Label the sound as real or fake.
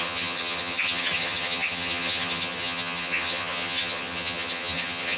fake